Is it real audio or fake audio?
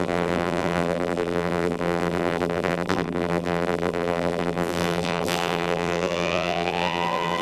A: fake